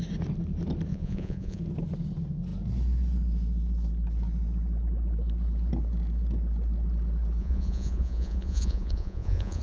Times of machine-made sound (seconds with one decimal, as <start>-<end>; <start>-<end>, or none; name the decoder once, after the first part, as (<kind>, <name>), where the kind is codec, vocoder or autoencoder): 0.9-1.6 (vocoder, Vocos); 7.4-9.6